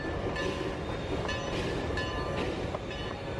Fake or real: real